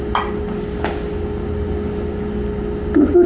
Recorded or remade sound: recorded